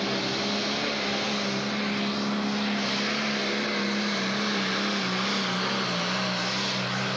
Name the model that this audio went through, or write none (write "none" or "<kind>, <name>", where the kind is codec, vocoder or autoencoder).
none